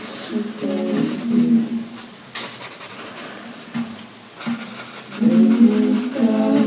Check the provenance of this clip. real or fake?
real